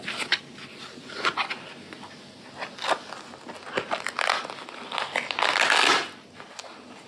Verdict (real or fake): real